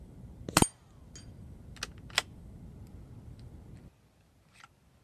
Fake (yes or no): no